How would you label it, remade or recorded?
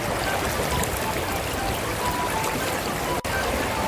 recorded